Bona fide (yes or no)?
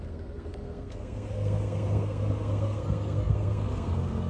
no